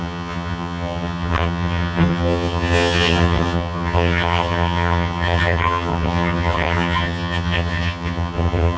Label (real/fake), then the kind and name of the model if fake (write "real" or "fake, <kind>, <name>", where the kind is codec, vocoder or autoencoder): fake, vocoder, HiFi-GAN